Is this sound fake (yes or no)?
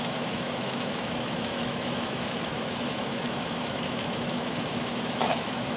yes